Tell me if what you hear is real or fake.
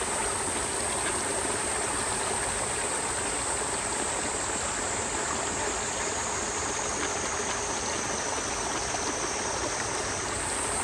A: real